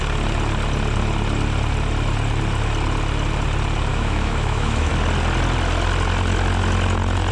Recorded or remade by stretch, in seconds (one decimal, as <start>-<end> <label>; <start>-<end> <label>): 0.0-3.9 recorded; 3.9-4.9 remade; 4.9-7.3 recorded